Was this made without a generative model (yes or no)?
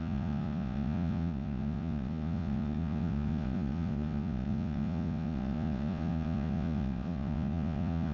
no